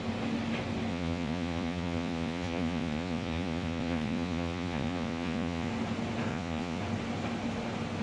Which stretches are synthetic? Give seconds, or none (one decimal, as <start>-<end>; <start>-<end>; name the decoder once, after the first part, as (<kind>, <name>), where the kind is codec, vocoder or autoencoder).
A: 0.9-5.7 (vocoder, Vocos); 6.3-6.8